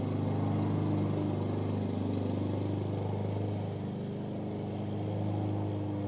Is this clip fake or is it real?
real